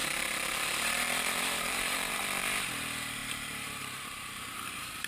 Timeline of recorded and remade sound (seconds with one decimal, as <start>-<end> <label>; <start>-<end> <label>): 0.0-2.6 remade; 2.6-3.2 recorded; 3.2-5.1 remade